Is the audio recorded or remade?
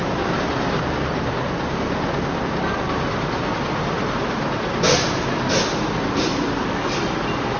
recorded